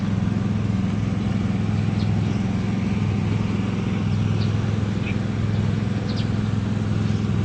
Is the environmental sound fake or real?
real